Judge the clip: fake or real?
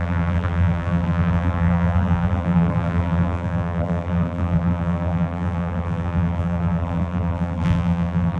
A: fake